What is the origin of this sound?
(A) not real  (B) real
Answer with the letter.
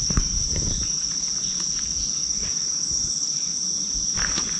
B